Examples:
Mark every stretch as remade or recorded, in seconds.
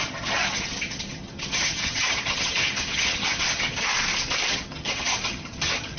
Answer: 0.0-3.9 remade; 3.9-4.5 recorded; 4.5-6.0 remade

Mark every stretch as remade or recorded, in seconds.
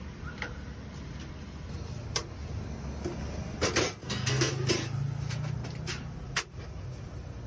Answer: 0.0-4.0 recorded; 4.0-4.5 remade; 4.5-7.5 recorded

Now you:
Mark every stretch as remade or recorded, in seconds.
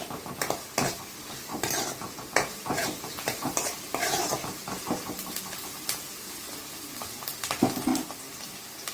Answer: 0.0-1.5 recorded; 1.5-4.6 remade; 4.6-8.9 recorded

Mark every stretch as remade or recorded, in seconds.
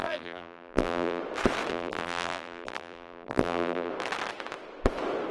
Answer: 0.0-1.2 remade; 1.2-1.7 recorded; 1.7-3.9 remade; 3.9-5.3 recorded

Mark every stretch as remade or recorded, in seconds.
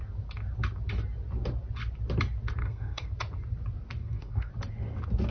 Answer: 0.0-2.6 recorded; 2.6-3.1 remade; 3.1-4.0 recorded; 4.0-4.5 remade; 4.5-5.3 recorded